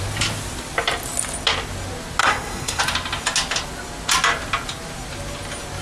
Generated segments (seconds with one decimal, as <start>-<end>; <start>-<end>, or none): 2.2-2.8